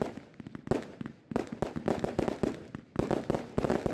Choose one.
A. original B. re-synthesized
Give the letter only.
A